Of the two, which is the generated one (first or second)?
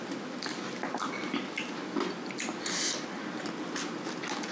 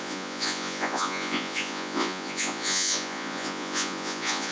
second